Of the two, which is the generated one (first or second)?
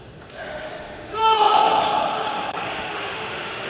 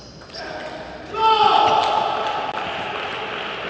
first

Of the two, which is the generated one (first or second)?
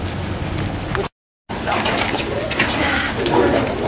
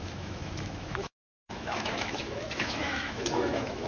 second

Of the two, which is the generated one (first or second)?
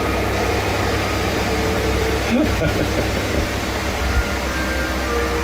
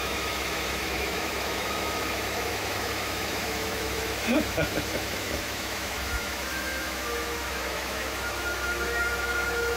second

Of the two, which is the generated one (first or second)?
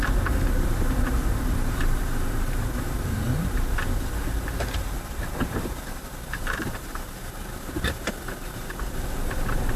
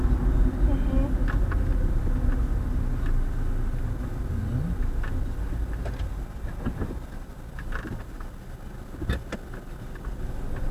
first